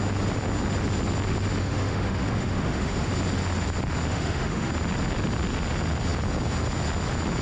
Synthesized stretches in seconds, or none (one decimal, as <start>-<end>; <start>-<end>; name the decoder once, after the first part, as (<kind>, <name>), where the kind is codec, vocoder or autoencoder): 1.6-3.1 (autoencoder, DAC-VAE); 4.1-4.7